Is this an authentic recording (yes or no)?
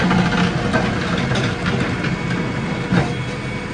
yes